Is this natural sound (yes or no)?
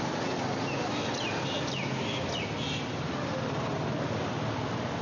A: yes